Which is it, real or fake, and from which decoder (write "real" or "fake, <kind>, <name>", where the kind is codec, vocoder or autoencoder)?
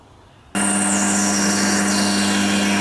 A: real